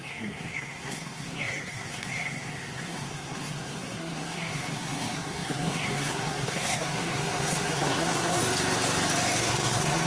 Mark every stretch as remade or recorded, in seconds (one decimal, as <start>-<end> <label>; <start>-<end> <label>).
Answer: 0.0-8.4 remade; 8.4-9.4 recorded; 9.4-10.1 remade

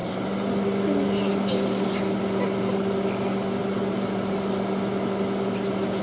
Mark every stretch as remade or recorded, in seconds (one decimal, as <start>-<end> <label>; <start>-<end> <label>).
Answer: 0.0-6.0 recorded

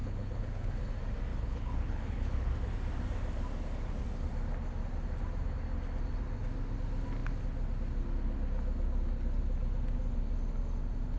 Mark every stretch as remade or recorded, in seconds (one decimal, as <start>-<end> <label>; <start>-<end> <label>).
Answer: 0.0-0.7 remade; 0.7-1.3 recorded; 1.3-2.5 remade; 2.5-11.2 recorded

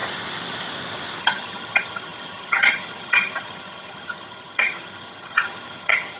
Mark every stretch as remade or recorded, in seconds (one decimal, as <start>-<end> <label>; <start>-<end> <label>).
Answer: 0.0-1.2 recorded; 1.2-6.2 remade

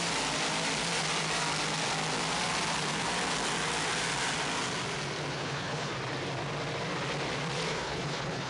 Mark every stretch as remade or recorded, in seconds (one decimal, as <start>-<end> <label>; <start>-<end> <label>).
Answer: 0.0-5.3 recorded; 5.3-5.9 remade; 5.9-7.7 recorded; 7.7-8.5 remade